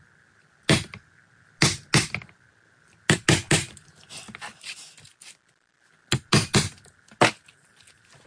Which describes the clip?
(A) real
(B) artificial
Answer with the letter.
A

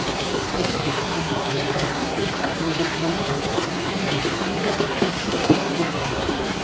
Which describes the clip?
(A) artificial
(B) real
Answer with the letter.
A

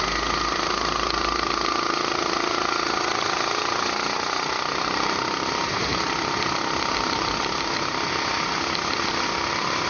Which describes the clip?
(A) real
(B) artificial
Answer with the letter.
A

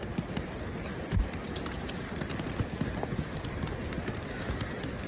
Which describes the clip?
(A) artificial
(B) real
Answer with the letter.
B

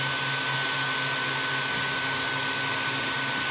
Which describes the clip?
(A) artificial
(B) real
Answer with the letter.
B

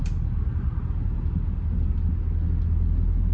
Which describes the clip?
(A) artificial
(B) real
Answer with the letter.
B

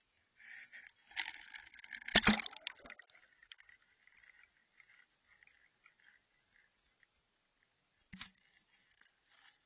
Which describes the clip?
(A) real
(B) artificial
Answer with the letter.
A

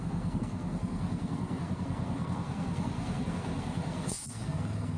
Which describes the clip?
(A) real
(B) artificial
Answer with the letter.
B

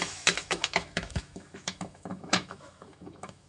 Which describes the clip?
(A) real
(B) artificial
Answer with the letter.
B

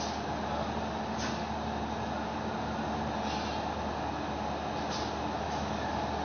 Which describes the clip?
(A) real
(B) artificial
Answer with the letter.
A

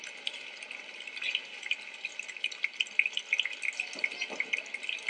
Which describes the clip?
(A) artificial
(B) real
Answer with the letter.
B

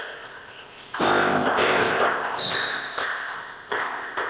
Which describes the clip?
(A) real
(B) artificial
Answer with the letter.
B